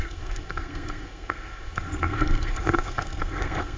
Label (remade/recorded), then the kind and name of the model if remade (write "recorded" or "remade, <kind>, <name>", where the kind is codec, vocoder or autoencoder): remade, codec, SNAC